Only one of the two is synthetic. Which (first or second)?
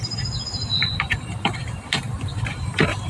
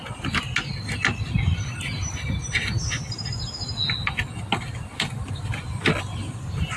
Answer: first